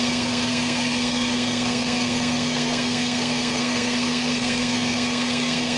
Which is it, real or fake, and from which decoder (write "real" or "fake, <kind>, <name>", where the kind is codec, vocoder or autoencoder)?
fake, codec, SNAC